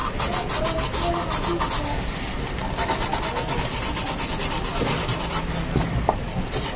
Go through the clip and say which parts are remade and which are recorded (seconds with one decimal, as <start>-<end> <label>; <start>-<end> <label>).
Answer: 0.0-6.8 recorded